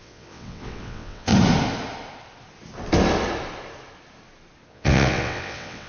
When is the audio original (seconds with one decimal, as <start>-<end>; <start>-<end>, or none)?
1.3-4.7